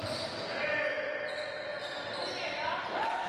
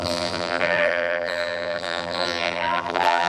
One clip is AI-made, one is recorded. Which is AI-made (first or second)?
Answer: second